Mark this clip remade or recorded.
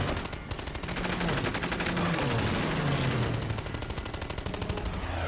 recorded